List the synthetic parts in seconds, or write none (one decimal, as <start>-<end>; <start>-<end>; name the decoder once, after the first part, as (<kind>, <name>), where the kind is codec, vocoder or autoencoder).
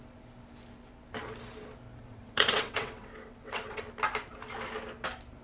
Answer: 2.0-3.8 (vocoder, WaveNeXt)